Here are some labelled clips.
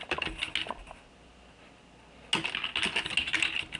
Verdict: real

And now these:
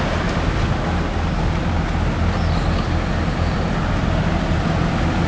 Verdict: real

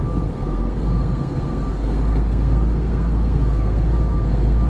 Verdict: fake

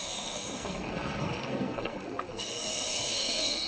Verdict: fake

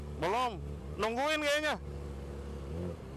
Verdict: real